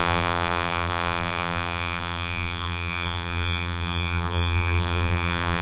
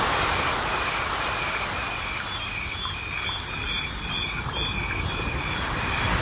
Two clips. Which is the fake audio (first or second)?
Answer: first